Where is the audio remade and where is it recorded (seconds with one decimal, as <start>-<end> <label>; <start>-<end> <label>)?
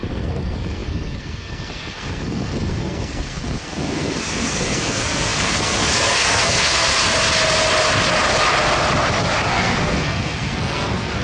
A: 0.0-6.9 remade; 6.9-9.5 recorded; 9.5-11.2 remade